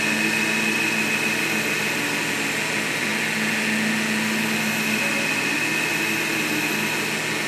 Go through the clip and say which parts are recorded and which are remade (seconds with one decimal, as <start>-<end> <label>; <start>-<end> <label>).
0.0-7.5 recorded